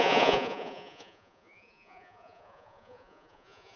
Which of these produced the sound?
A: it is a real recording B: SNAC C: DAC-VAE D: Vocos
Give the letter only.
D